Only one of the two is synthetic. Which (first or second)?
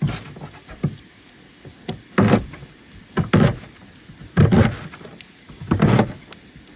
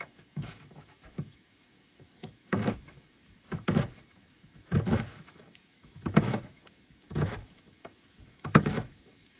second